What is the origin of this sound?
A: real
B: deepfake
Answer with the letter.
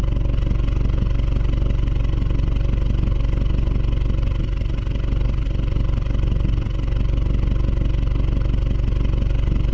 A